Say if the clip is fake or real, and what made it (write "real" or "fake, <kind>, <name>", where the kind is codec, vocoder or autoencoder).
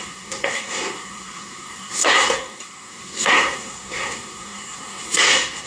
fake, codec, SNAC